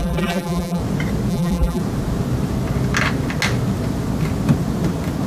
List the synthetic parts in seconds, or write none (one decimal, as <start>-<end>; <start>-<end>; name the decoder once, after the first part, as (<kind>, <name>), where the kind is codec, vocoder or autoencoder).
0.0-0.8 (vocoder, BigVGAN v2); 1.3-1.8